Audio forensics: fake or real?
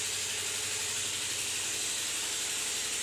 real